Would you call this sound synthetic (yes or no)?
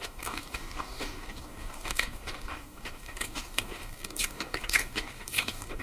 yes